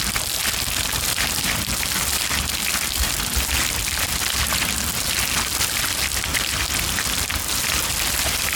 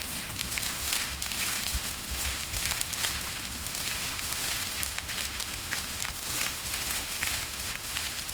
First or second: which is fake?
second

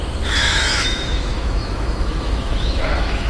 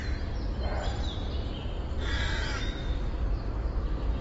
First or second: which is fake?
first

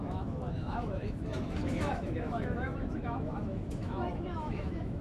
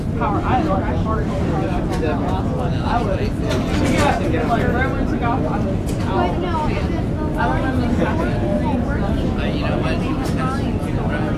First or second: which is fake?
first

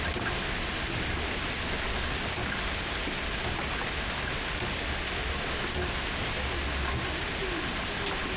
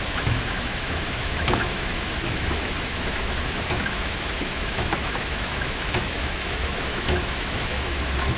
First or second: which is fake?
second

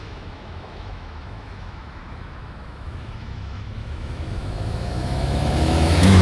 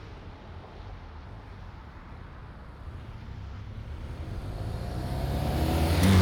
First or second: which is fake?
first